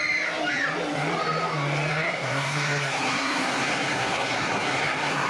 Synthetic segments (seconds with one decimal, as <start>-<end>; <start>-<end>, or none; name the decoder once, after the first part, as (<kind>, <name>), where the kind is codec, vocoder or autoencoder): 1.9-5.3 (codec, SNAC)